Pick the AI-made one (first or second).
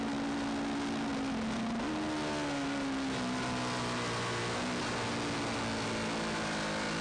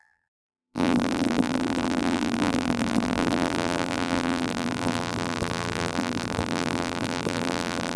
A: second